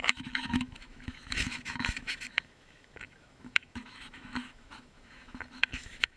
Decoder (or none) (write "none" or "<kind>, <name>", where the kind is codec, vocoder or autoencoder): autoencoder, DAC-VAE